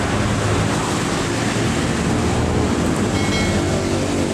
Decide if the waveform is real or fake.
real